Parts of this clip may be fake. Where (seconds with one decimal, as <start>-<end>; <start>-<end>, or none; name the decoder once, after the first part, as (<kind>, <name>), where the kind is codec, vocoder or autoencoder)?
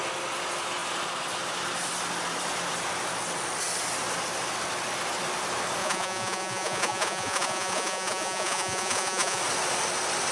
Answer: 5.8-9.4 (vocoder, Vocos)